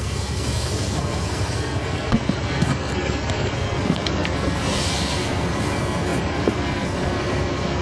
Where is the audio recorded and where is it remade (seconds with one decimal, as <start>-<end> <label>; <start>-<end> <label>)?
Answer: 0.0-7.8 remade

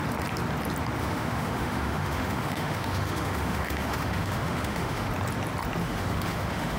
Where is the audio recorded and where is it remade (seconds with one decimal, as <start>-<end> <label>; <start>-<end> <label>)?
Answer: 0.0-1.0 recorded; 1.0-5.1 remade; 5.1-5.8 recorded; 5.8-6.8 remade